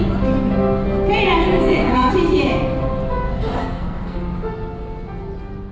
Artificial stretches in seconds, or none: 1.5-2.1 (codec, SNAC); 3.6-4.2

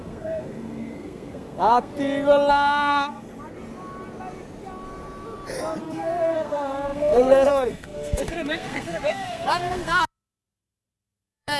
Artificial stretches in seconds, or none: 0.0-1.9 (codec, SNAC); 2.5-3.3; 5.8-11.6